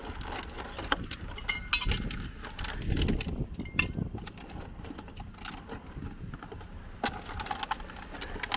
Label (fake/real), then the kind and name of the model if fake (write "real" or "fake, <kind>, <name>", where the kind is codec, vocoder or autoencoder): real